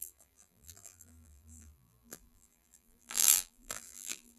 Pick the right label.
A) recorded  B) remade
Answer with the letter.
B